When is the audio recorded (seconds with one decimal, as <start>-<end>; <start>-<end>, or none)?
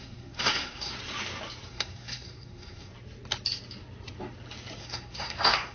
0.9-1.7; 2.9-4.8